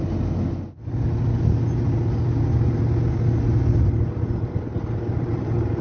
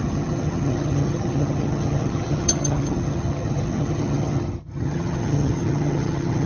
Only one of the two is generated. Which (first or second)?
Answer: second